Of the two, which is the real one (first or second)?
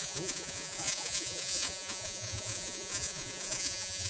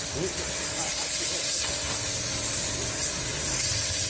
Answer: second